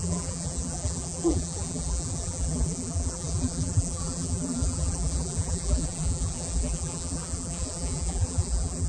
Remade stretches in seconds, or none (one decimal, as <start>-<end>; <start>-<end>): 0.0-8.9